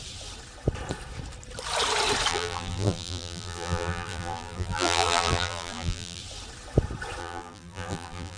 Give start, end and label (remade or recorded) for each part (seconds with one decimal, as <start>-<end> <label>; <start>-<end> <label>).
0.0-2.3 recorded; 2.3-6.2 remade; 6.2-7.2 recorded; 7.2-8.4 remade